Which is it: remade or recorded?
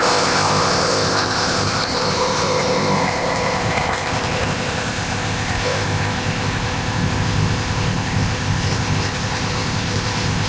remade